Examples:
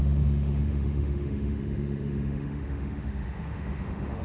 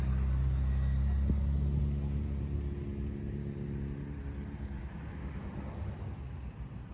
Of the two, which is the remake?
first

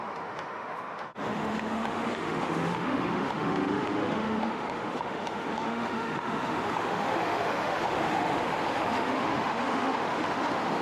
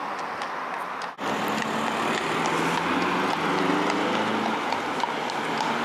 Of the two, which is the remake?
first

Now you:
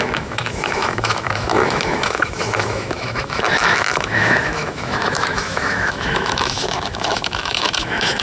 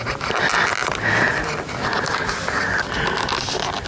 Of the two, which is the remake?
first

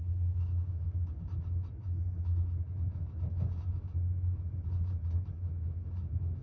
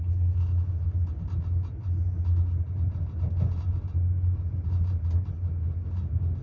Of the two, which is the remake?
first